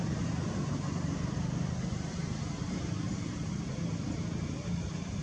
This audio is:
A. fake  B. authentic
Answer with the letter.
B